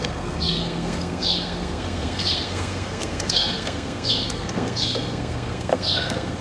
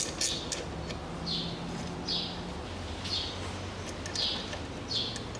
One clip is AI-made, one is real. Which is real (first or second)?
second